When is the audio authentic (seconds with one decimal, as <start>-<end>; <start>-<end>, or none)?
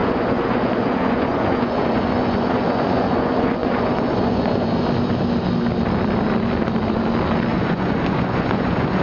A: 4.8-7.5